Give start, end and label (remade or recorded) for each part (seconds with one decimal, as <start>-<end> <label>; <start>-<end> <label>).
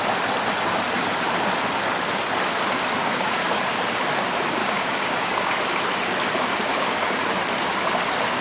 0.0-3.0 recorded; 3.0-3.6 remade; 3.6-4.6 recorded; 4.6-5.6 remade; 5.6-6.7 recorded; 6.7-7.2 remade; 7.2-8.4 recorded